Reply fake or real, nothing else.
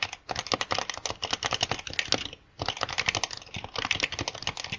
real